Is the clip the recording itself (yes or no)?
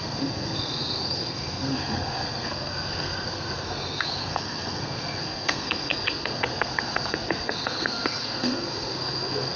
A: no